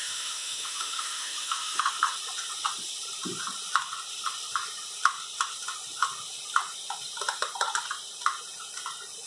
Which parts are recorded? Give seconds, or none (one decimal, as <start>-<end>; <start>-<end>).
1.9-9.3